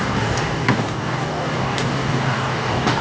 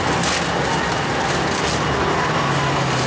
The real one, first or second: second